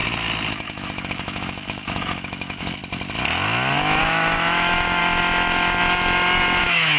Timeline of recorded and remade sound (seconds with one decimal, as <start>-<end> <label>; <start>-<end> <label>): 0.0-0.5 recorded; 0.5-2.8 remade; 2.8-4.0 recorded; 4.0-5.0 remade; 5.0-6.6 recorded; 6.6-7.0 remade

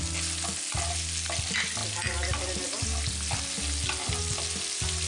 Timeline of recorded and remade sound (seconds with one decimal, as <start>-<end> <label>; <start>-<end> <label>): 0.0-5.1 recorded

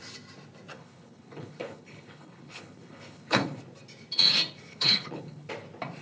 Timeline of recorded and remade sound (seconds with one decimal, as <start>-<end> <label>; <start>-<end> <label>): 0.0-0.7 recorded; 0.7-3.6 remade; 3.6-4.7 recorded; 4.7-5.5 remade; 5.5-6.0 recorded

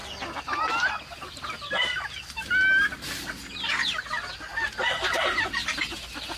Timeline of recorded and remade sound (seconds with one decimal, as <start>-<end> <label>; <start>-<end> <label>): 0.0-6.4 recorded

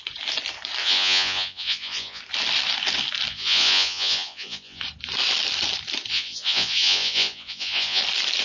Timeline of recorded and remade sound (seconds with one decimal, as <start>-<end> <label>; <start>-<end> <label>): 0.0-0.8 recorded; 0.8-2.2 remade; 2.2-3.3 recorded; 3.3-4.8 remade; 4.8-6.1 recorded; 6.1-8.0 remade; 8.0-8.4 recorded

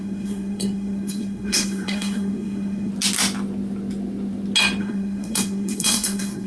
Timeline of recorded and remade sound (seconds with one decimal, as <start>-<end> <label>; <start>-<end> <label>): 0.0-2.9 remade; 2.9-4.8 recorded; 4.8-6.5 remade

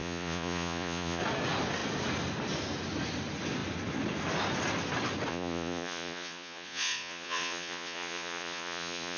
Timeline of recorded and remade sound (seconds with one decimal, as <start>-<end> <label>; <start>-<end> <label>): 0.0-1.2 remade; 1.2-5.3 recorded; 5.3-9.2 remade